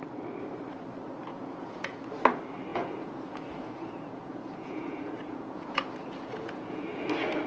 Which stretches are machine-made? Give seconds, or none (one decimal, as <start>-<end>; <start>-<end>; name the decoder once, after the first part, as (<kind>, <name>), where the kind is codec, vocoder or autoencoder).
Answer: 1.3-2.0 (vocoder, Vocos); 2.7-7.1